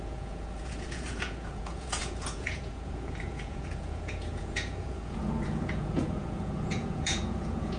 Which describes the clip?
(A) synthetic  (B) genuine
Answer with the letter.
A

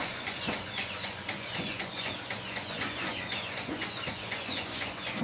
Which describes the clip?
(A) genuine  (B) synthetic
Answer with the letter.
B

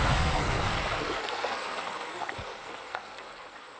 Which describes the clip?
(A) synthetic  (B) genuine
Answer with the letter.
A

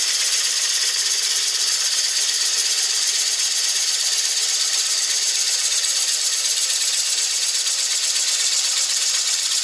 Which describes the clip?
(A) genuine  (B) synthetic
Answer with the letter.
B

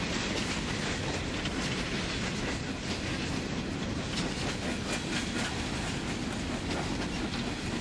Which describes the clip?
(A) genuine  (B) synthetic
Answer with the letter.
A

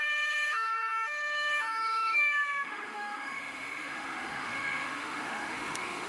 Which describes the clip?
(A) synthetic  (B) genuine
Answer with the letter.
A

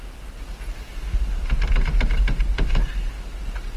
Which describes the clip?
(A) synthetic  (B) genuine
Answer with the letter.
B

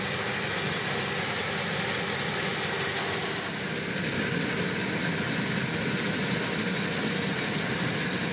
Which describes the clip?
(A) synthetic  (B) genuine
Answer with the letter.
B